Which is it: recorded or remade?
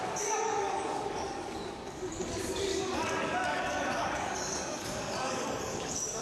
remade